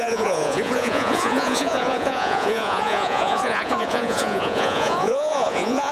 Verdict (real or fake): fake